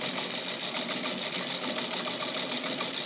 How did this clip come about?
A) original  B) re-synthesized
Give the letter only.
A